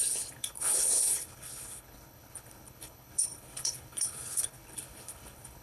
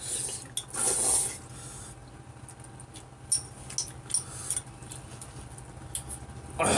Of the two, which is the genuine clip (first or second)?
second